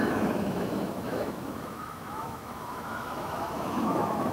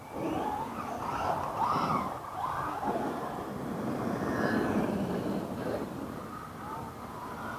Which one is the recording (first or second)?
second